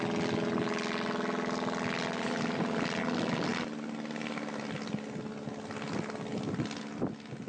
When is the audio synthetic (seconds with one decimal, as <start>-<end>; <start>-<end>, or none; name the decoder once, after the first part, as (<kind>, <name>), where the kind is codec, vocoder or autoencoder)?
none